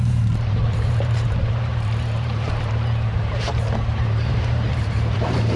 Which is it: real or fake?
fake